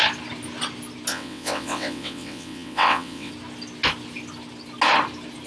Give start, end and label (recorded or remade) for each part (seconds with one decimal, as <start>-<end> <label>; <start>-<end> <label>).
0.0-1.1 recorded; 1.1-3.3 remade; 3.3-5.5 recorded